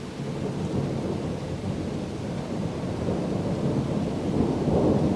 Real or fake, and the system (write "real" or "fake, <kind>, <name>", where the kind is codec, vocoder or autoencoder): real